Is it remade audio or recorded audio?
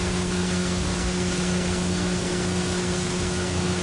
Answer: remade